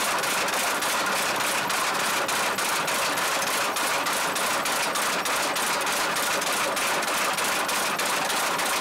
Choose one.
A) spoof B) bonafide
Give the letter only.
B